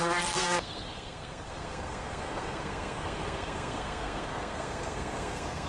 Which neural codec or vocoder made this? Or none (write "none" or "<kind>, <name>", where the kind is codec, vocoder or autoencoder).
codec, SNAC